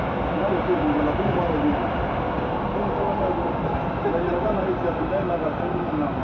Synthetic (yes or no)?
no